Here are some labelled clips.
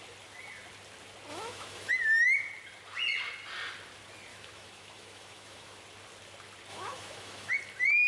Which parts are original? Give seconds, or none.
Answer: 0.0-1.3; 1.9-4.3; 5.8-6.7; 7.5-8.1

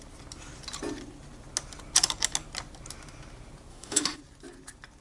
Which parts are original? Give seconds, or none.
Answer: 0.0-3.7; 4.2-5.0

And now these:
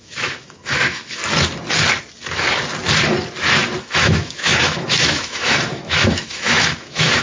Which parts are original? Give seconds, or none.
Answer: 1.2-3.8

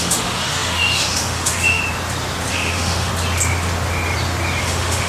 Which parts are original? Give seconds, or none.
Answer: 1.8-2.5; 3.1-4.6

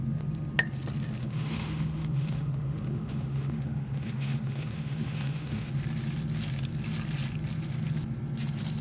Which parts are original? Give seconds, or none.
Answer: 0.0-1.2; 5.7-8.8

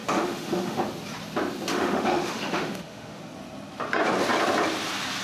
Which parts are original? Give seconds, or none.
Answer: 0.8-1.7; 3.2-5.2

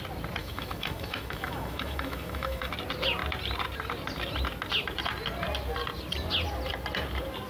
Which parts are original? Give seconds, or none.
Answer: 0.0-0.4; 2.7-7.5